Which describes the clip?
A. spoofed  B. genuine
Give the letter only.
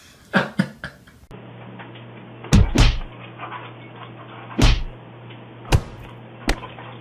B